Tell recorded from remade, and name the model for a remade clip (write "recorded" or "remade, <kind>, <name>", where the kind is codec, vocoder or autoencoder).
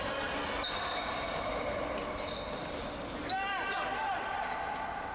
recorded